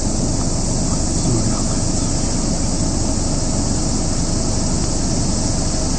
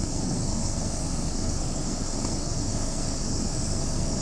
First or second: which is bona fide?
first